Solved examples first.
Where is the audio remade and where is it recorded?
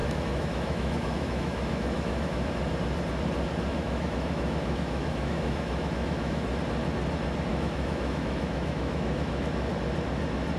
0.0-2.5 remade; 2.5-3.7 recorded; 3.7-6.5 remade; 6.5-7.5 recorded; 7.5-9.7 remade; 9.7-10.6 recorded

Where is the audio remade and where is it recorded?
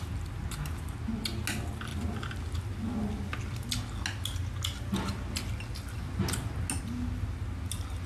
0.0-8.1 recorded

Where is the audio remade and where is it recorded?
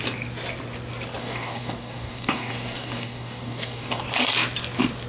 0.0-1.2 recorded; 1.2-4.0 remade; 4.0-5.1 recorded